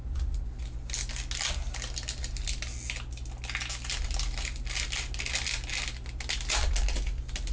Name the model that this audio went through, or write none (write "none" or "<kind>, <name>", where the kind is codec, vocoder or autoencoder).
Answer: none